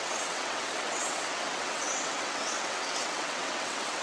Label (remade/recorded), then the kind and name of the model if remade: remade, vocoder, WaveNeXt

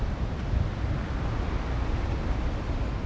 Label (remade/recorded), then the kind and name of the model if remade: recorded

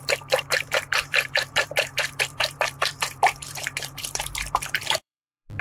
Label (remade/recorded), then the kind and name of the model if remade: remade, vocoder, BigVGAN v2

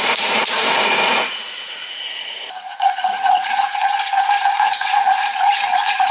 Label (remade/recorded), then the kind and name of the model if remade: remade, vocoder, Vocos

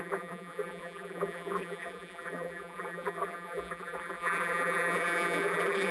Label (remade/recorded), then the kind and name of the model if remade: remade, vocoder, BigVGAN v2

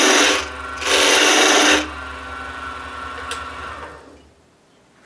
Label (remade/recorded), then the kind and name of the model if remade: recorded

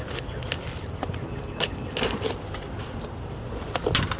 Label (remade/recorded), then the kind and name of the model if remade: recorded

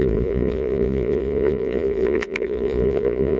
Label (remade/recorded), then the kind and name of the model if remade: remade, vocoder, Vocos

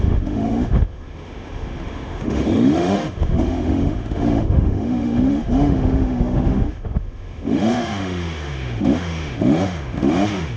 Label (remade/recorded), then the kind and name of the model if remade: remade, autoencoder, DAC-VAE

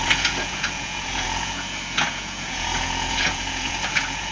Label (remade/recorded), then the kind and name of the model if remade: remade, vocoder, Vocos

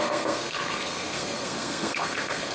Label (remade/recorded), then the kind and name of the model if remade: remade, codec, SNAC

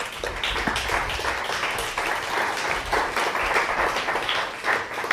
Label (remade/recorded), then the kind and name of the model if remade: recorded